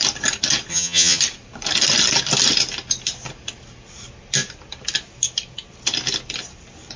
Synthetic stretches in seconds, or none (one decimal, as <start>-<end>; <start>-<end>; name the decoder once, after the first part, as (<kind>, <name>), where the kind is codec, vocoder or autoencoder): 0.7-1.2 (vocoder, HiFi-GAN)